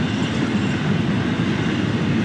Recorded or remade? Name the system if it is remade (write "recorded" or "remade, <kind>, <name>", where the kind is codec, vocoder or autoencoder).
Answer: recorded